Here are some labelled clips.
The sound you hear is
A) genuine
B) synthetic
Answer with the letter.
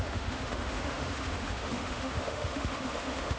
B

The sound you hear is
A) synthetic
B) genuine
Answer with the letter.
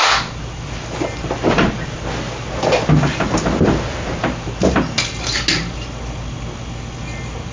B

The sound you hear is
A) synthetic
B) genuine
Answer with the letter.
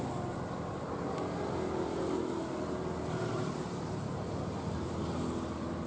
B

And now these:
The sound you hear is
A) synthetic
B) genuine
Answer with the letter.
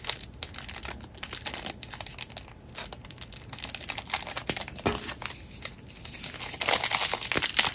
B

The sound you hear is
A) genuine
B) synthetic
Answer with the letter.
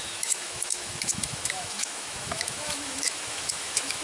B